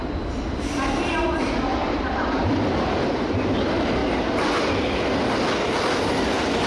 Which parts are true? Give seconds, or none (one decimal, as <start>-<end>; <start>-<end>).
0.0-1.8; 2.7-6.7